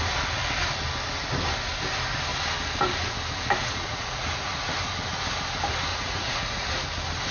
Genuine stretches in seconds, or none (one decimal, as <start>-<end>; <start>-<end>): 0.0-3.6; 4.6-5.9; 6.7-7.3